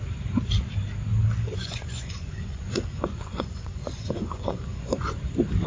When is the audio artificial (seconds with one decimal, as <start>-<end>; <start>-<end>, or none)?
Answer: 1.5-4.9